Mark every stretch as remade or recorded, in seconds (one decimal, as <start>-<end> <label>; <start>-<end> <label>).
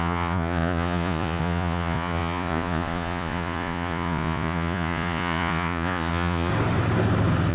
0.0-6.5 remade; 6.5-7.5 recorded